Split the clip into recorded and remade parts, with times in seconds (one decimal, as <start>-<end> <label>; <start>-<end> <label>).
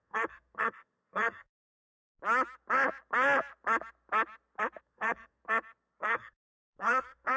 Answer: 0.0-2.1 remade; 2.1-4.8 recorded; 4.8-5.4 remade; 5.4-6.0 recorded; 6.0-7.4 remade